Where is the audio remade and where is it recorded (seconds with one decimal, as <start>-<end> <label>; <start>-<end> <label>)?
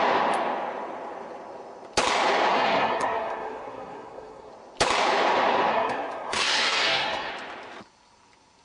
0.0-2.5 recorded; 2.5-4.5 remade; 4.5-5.7 recorded; 5.7-7.3 remade; 7.3-8.6 recorded